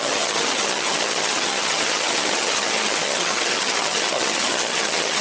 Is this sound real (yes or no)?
no